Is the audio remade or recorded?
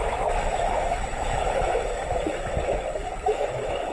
remade